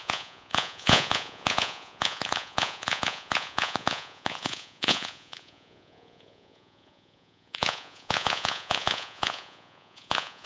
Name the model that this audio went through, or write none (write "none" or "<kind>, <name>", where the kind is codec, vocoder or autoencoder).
vocoder, Vocos